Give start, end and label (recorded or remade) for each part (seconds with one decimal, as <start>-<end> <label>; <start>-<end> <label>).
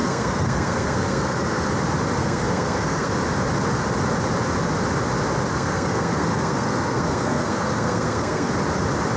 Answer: 0.0-1.7 remade; 1.7-2.2 recorded; 2.2-3.1 remade; 3.1-5.5 recorded; 5.5-8.5 remade; 8.5-9.2 recorded